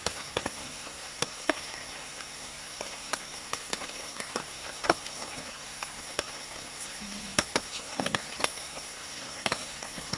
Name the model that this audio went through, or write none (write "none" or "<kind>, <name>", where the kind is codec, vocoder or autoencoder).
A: codec, SNAC